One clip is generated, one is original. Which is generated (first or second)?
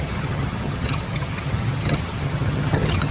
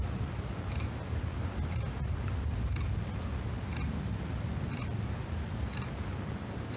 first